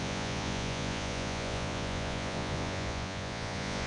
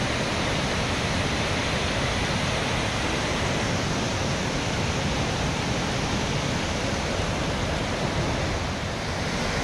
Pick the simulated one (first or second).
first